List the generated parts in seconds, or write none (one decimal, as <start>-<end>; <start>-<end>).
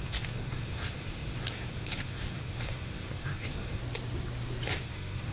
0.0-3.8; 4.7-5.3